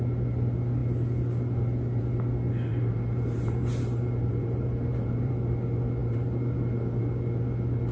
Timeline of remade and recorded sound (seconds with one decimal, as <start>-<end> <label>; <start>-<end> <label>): 0.0-2.7 recorded; 2.7-5.3 remade; 5.3-6.0 recorded; 6.0-7.0 remade; 7.0-7.9 recorded